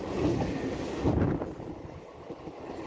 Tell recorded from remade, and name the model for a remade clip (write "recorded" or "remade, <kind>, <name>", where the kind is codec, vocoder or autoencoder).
recorded